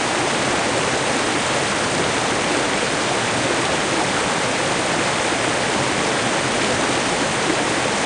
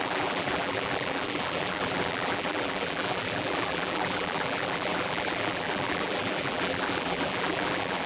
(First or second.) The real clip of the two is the first